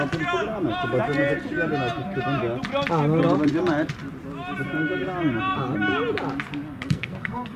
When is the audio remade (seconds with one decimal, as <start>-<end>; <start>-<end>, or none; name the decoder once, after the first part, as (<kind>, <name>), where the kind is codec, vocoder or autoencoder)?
6.5-7.6 (codec, SNAC)